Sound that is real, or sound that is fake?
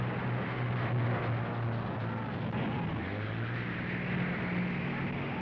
real